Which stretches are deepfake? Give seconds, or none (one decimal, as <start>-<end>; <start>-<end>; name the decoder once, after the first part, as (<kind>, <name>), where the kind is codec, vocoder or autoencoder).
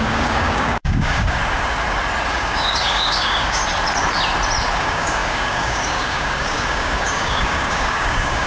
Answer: 0.0-1.4 (codec, DAC); 2.3-3.6; 4.8-8.5